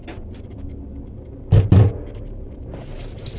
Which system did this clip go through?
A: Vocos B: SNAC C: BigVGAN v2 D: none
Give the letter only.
D